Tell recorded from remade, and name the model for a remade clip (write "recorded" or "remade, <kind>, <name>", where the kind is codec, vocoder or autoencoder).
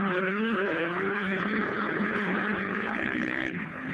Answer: remade, codec, HILCodec